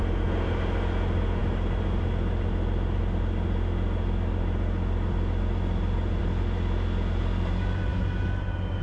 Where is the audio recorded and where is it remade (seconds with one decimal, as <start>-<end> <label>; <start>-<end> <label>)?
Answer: 0.0-8.8 recorded